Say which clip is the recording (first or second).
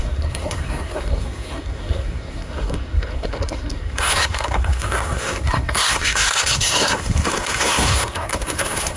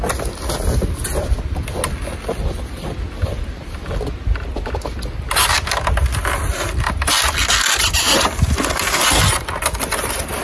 second